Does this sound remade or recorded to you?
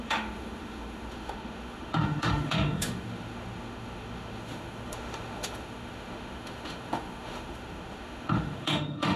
remade